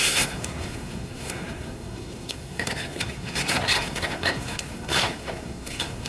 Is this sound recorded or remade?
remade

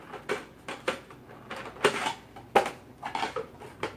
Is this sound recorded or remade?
recorded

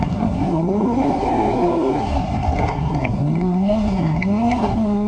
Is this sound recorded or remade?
remade